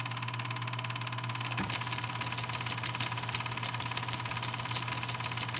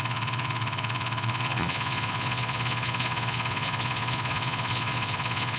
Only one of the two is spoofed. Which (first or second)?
second